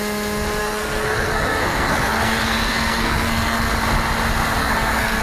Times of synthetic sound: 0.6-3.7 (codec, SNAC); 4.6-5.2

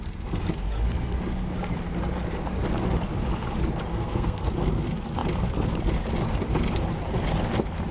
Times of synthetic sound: 3.9-4.5 (codec, SNAC)

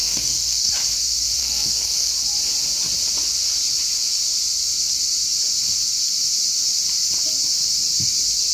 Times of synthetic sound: 0.0-0.7 (codec, SNAC); 1.4-2.1